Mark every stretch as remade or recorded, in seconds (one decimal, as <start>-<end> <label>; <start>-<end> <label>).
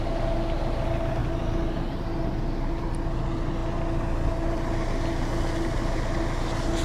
0.0-6.8 recorded